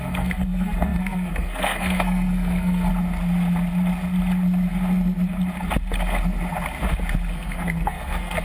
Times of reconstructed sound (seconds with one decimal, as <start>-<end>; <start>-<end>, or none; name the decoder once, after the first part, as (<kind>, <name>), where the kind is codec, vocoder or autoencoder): 0.0-2.9 (codec, SNAC); 7.3-8.4